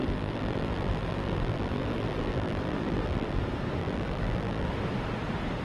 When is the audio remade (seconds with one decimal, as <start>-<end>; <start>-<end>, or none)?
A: 0.0-3.4; 3.8-4.7